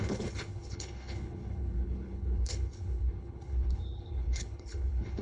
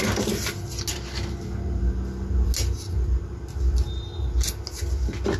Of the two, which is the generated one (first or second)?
first